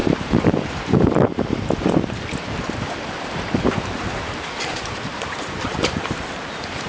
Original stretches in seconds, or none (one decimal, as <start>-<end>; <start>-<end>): none

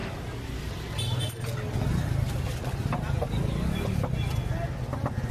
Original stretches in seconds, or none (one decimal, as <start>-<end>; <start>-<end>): 1.2-5.3

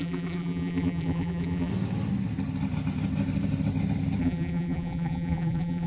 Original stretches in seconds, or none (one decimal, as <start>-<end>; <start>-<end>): 1.7-4.2

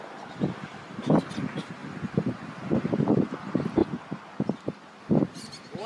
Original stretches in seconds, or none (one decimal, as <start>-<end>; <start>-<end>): 3.8-5.0

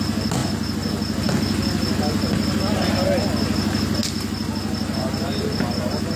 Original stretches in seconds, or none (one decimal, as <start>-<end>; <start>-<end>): 0.0-6.2

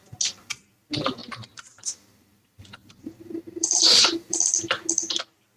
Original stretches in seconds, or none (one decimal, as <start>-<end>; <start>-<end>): 0.0-1.2; 4.4-5.6